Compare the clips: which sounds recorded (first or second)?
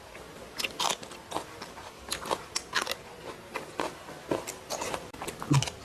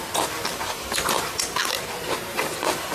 first